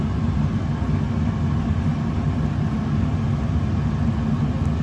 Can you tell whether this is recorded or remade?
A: recorded